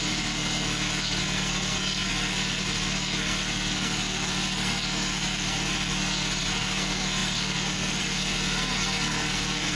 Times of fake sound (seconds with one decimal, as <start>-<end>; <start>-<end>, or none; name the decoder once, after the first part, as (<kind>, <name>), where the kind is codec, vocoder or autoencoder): 0.0-9.8 (codec, SNAC)